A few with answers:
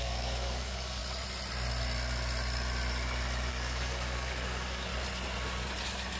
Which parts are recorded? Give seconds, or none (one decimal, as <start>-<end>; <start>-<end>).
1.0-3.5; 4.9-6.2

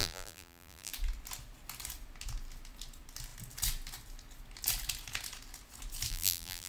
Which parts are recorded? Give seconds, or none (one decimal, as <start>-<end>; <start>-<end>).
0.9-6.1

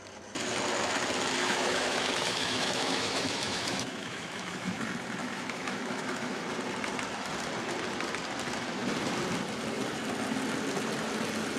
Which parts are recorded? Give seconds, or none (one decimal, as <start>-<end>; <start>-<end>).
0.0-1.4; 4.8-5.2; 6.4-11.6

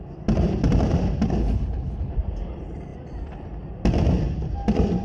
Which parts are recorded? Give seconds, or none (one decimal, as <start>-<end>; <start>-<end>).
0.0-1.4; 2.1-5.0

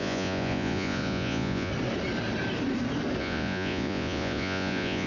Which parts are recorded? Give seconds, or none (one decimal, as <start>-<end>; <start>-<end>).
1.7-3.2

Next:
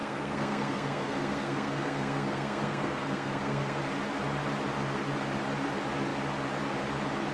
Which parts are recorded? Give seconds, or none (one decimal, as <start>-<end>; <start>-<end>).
3.8-7.3

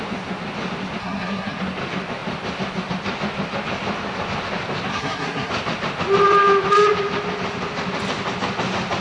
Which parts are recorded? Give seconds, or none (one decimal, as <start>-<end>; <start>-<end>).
0.0-1.0; 1.6-4.9; 5.5-9.0